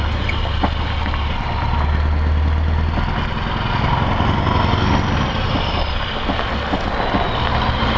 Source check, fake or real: real